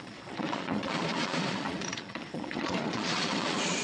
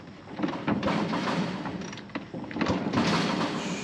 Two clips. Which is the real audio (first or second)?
second